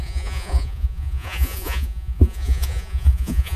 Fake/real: fake